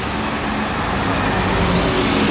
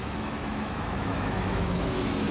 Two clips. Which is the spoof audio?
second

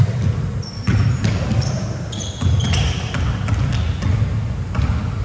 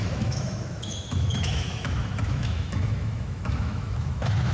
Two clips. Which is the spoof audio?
second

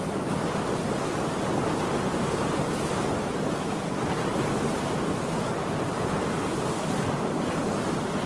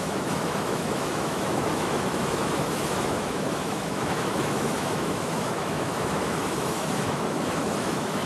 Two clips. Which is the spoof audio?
second